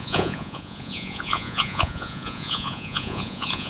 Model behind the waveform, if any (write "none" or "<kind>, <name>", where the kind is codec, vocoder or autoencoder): vocoder, Vocos